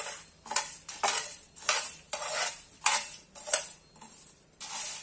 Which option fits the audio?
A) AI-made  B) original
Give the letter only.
B